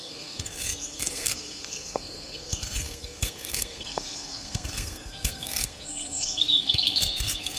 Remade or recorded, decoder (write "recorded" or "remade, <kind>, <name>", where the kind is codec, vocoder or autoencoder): remade, codec, SNAC